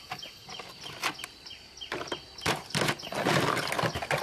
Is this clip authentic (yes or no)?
yes